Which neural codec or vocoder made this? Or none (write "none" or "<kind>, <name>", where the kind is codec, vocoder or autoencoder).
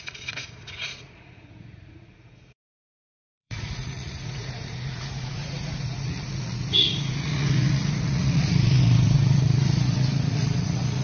vocoder, Vocos